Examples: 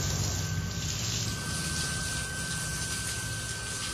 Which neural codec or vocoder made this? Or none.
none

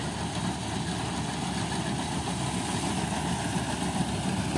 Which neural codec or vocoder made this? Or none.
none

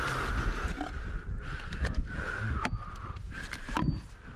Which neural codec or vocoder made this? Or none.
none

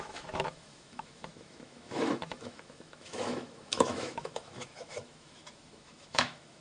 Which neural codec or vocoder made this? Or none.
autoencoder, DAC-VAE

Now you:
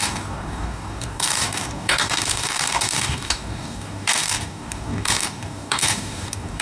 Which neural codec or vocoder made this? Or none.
codec, DAC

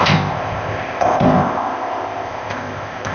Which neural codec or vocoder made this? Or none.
codec, ZipCodec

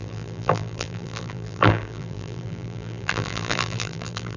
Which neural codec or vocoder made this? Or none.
vocoder, BigVGAN v2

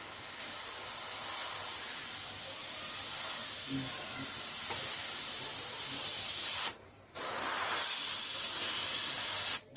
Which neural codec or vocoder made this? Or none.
none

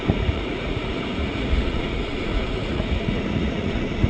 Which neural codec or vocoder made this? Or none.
vocoder, Vocos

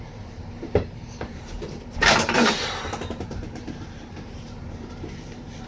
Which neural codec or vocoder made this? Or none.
vocoder, BigVGAN v2